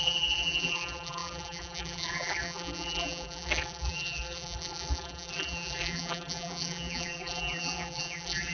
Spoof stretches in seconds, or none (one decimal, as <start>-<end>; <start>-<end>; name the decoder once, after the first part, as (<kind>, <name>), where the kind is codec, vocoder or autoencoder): 0.0-8.5 (vocoder, BigVGAN v2)